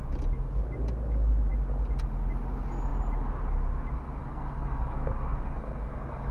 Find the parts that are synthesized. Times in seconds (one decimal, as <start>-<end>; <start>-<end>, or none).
4.2-6.3